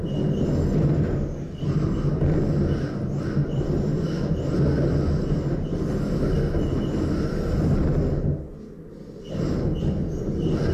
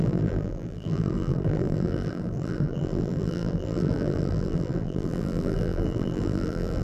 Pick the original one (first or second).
first